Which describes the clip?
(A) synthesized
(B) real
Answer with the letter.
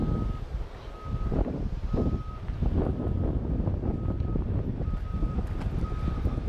B